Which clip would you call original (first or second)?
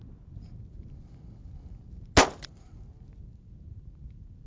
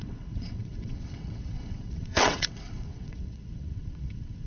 first